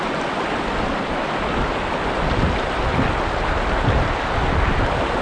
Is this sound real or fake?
real